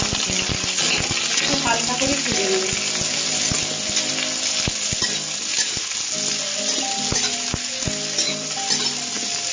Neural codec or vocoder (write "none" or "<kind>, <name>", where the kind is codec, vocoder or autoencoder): none